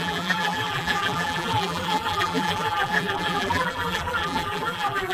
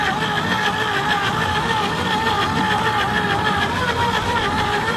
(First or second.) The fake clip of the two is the first